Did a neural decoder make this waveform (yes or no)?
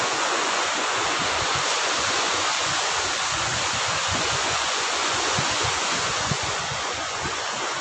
yes